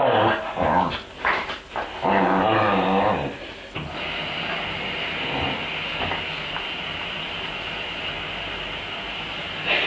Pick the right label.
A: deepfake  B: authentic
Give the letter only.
B